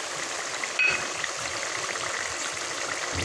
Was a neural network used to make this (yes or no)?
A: no